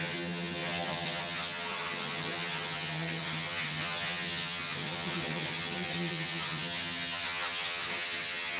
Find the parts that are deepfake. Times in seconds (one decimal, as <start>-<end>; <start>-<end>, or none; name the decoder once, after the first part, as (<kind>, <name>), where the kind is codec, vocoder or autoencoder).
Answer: 0.0-8.6 (vocoder, HiFi-GAN)